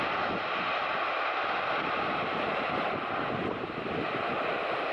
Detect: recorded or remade recorded